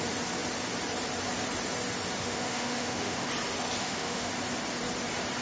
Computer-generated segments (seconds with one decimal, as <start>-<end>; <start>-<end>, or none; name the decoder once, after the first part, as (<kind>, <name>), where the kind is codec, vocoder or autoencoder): 2.2-3.3 (autoencoder, DAC-VAE); 3.8-4.3